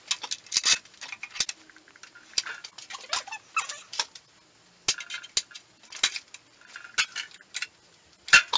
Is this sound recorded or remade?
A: recorded